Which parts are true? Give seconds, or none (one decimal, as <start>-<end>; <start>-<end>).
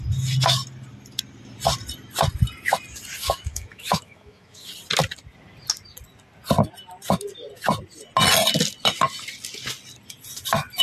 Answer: 0.0-3.2; 4.7-10.8